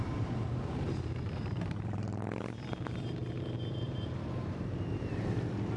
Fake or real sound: fake